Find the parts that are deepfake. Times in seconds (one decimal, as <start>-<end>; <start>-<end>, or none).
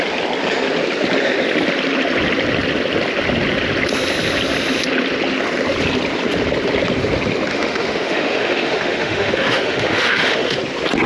7.5-10.6